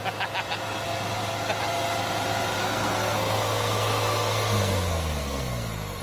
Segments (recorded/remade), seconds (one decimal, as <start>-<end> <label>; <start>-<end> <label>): 0.0-2.6 recorded; 2.6-6.0 remade